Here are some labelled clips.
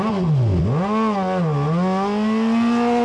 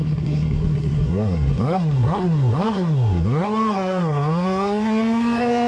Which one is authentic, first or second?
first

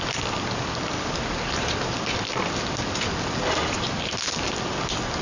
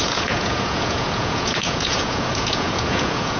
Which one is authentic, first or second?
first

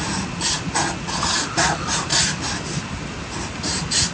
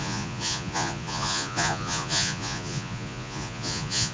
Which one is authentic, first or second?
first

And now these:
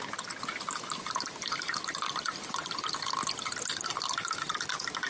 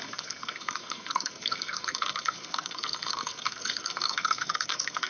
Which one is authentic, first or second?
first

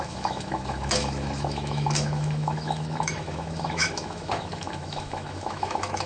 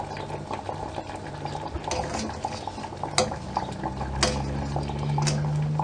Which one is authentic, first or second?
second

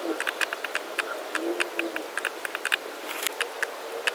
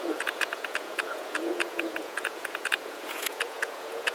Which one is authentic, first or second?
first